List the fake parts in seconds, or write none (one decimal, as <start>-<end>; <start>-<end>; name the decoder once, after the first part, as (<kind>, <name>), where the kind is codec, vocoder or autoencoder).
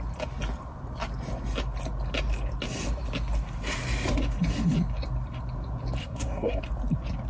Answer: 6.0-6.6 (codec, SNAC)